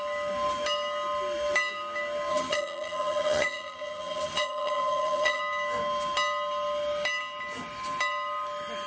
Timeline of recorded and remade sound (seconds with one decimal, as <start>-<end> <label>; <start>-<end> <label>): 0.0-2.3 recorded; 2.3-5.4 remade; 5.4-8.9 recorded